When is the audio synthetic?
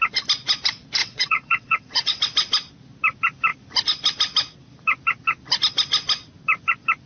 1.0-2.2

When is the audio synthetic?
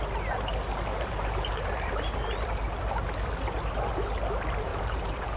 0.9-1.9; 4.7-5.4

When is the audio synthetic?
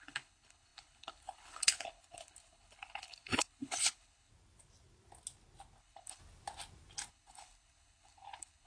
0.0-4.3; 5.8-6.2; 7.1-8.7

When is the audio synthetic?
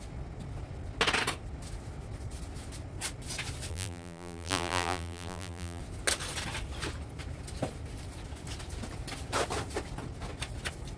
3.7-5.8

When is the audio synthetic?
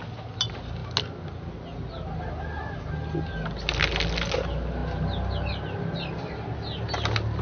none